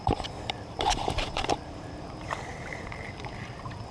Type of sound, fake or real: fake